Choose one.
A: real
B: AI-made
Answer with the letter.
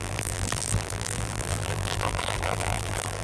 B